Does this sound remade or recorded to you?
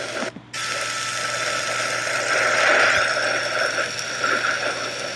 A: recorded